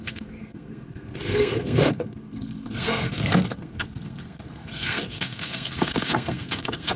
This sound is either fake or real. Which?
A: fake